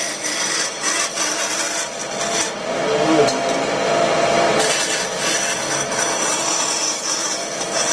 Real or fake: real